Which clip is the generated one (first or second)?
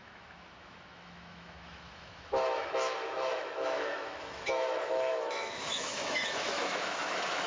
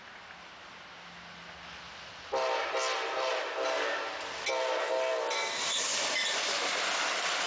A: first